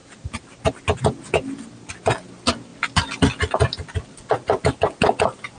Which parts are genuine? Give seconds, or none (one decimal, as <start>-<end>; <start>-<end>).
0.0-5.6